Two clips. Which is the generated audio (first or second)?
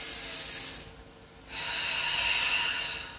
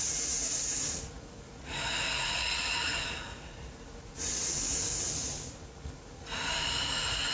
second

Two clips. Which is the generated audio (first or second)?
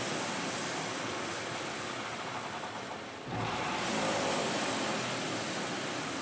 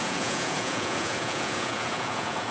second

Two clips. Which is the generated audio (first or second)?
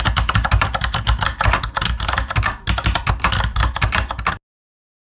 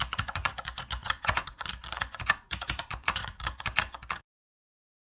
second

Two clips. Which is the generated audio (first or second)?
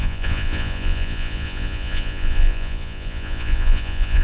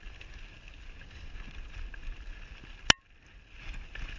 first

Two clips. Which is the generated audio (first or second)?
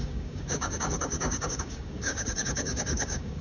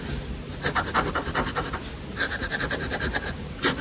first